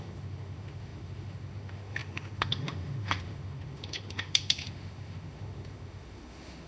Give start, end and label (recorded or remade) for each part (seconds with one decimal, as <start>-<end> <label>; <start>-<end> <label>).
0.0-6.7 remade